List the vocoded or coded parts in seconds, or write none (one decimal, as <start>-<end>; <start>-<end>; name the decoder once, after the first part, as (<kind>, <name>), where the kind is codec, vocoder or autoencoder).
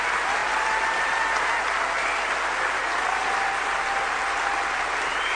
none